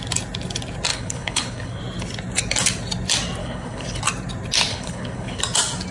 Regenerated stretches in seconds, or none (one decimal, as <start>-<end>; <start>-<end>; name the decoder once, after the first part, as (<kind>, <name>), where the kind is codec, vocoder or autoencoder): 0.9-1.8 (codec, HILCodec); 3.4-4.0; 4.7-5.4